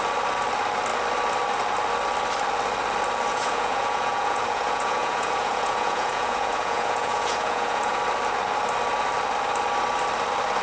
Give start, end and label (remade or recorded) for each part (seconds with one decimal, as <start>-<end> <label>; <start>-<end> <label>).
0.0-3.3 recorded; 3.3-8.0 remade; 8.0-10.6 recorded